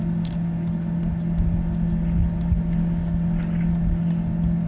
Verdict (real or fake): real